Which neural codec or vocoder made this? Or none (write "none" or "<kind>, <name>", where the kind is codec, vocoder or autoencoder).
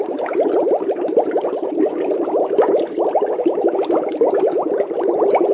none